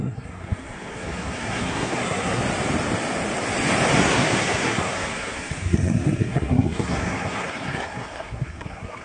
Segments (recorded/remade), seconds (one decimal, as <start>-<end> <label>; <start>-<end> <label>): 0.0-2.4 remade; 2.4-4.0 recorded; 4.0-9.0 remade